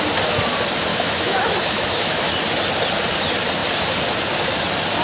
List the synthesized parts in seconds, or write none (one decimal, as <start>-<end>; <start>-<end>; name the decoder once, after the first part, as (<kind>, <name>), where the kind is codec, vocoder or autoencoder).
0.9-2.2 (autoencoder, DAC-VAE)